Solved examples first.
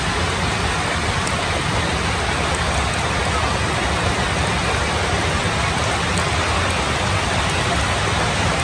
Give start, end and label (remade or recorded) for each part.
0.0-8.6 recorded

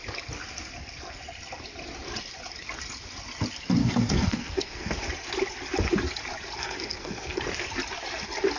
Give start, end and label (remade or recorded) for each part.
0.0-3.8 recorded; 3.8-4.9 remade; 4.9-6.6 recorded; 6.6-7.4 remade; 7.4-8.6 recorded

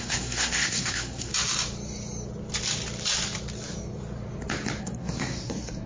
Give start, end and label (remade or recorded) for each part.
0.0-1.3 remade; 1.3-4.8 recorded; 4.8-5.9 remade